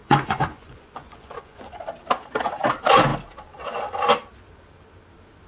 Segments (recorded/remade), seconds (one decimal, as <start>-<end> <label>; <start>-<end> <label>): 0.0-1.8 remade; 1.8-5.5 recorded